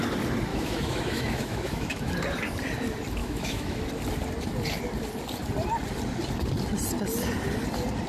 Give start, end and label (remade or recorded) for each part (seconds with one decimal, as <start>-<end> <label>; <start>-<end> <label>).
0.0-0.5 recorded; 0.5-2.1 remade; 2.1-3.2 recorded; 3.2-3.8 remade; 3.8-8.1 recorded

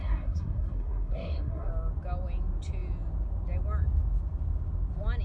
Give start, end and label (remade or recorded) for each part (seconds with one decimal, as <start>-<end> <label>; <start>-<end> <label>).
0.0-1.7 remade; 1.7-5.2 recorded

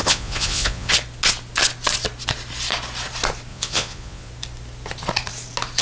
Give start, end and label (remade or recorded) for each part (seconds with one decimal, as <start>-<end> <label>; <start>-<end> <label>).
0.0-0.9 remade; 0.9-3.5 recorded; 3.5-4.3 remade; 4.3-5.8 recorded

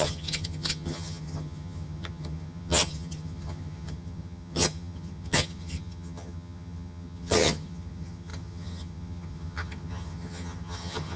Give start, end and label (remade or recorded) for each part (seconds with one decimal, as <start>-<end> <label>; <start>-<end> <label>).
0.0-11.2 remade

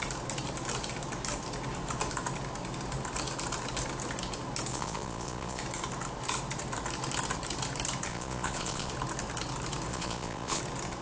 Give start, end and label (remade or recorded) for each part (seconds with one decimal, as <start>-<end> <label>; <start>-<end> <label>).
0.0-4.7 recorded; 4.7-5.6 remade; 5.6-8.1 recorded; 8.1-8.9 remade; 8.9-9.9 recorded; 9.9-10.6 remade; 10.6-11.0 recorded

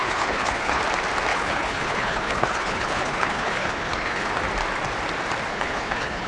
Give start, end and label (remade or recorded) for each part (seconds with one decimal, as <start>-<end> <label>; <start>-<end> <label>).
0.0-0.8 remade; 0.8-1.3 recorded; 1.3-4.3 remade; 4.3-5.5 recorded; 5.5-6.3 remade

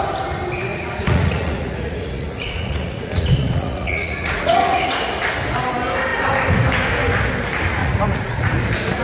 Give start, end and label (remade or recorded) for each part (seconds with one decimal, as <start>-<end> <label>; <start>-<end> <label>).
0.0-0.7 recorded; 0.7-4.9 remade; 4.9-7.8 recorded; 7.8-8.6 remade; 8.6-9.0 recorded

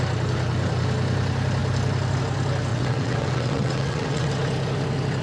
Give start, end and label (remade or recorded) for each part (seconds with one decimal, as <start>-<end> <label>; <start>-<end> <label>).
0.0-2.7 recorded; 2.7-4.3 remade; 4.3-5.2 recorded